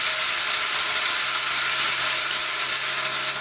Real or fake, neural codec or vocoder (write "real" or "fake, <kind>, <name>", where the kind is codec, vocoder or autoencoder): real